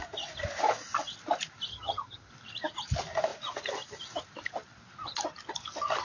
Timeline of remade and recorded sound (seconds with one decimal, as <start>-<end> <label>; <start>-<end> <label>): 0.0-1.7 recorded; 1.7-2.3 remade; 2.3-6.0 recorded